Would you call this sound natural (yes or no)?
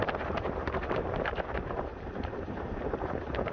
no